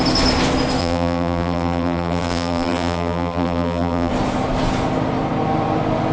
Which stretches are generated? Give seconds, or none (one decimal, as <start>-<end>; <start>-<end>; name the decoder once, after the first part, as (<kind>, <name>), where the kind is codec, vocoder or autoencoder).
0.8-4.1 (vocoder, BigVGAN v2)